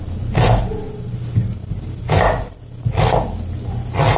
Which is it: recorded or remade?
recorded